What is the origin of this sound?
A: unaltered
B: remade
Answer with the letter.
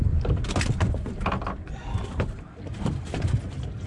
A